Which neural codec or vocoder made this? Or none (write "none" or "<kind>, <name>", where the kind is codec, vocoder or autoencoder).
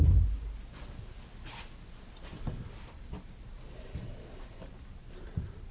none